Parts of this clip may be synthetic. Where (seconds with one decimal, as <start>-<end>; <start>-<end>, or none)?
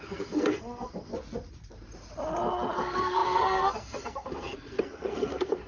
0.0-1.1; 2.8-5.7